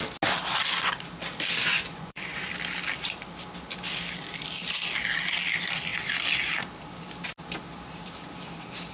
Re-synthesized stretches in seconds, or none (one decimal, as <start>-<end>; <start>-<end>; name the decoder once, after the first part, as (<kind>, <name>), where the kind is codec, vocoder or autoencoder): 1.7-2.5 (vocoder, Vocos)